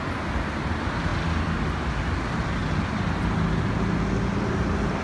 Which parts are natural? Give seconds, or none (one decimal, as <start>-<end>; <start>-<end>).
0.0-5.0